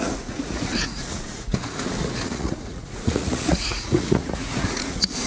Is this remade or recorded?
remade